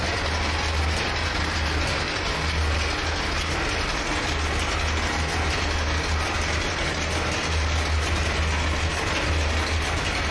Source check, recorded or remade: recorded